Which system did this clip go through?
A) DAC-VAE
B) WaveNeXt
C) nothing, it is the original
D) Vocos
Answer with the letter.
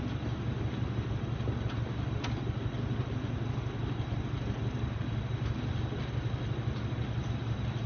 C